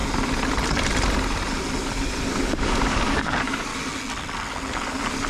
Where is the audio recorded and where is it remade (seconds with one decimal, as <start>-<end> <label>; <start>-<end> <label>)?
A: 0.0-2.3 recorded; 2.3-3.7 remade; 3.7-5.3 recorded